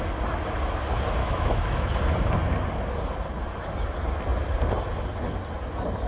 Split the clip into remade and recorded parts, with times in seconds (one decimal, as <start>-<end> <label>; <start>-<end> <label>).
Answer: 0.0-1.2 recorded; 1.2-1.9 remade; 1.9-6.1 recorded